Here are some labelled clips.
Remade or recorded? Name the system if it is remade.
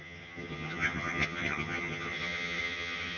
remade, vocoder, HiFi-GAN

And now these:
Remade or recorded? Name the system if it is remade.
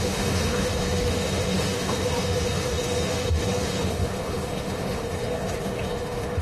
remade, autoencoder, DAC-VAE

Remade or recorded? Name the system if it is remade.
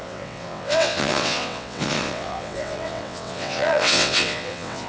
remade, vocoder, WaveNeXt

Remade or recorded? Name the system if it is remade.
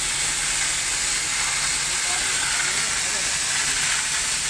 recorded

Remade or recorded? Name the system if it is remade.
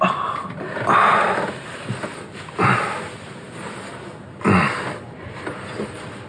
recorded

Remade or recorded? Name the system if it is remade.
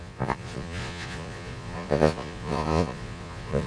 remade, vocoder, Vocos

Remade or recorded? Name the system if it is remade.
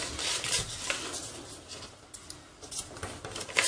recorded